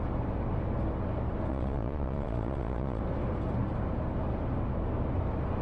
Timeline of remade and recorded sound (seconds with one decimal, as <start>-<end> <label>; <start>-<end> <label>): 0.0-1.5 recorded; 1.5-3.0 remade; 3.0-5.6 recorded